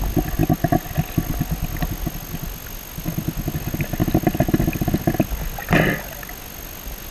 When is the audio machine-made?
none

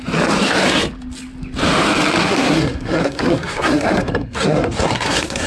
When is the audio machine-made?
2.2-5.5 (codec, SNAC)

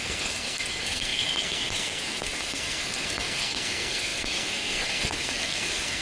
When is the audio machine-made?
0.0-6.0 (codec, SNAC)